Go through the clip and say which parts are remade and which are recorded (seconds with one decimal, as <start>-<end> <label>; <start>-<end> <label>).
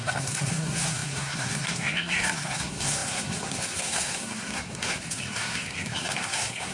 0.0-6.7 remade